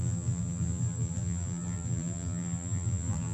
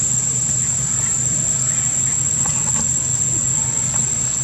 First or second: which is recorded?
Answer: second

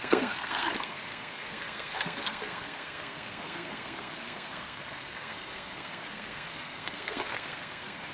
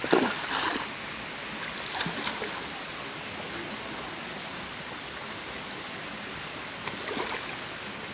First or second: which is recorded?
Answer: second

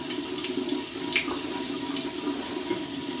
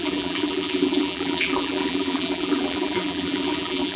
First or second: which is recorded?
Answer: first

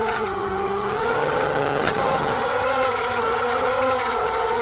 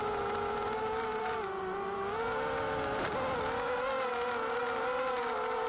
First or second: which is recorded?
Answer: second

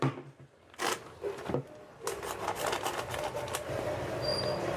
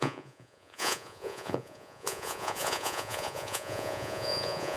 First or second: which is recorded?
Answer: first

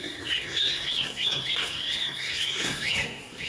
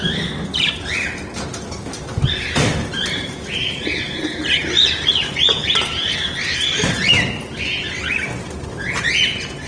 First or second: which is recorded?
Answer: second